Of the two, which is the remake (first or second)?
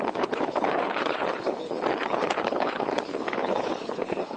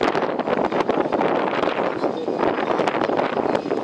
first